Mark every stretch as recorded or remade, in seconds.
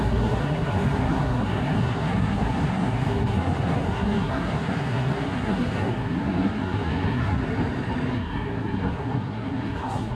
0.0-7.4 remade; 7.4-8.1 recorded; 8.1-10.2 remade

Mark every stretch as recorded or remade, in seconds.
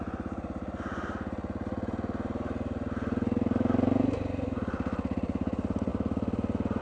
0.0-6.8 recorded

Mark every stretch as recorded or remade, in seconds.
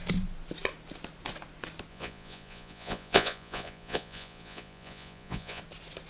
0.0-1.9 recorded; 1.9-5.6 remade; 5.6-6.1 recorded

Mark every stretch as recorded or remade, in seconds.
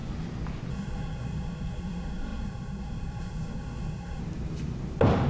0.0-0.7 recorded; 0.7-4.2 remade; 4.2-5.3 recorded